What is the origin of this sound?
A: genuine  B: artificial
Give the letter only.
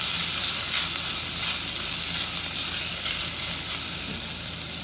A